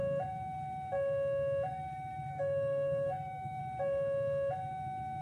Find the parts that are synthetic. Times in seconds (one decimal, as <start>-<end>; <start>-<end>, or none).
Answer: 2.3-3.6